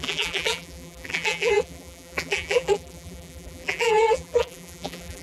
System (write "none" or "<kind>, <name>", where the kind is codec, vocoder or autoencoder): vocoder, BigVGAN v2